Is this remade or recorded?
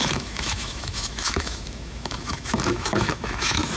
remade